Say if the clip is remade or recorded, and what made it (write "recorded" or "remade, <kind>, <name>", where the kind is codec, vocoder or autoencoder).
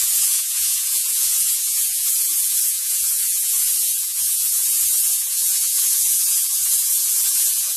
remade, vocoder, Vocos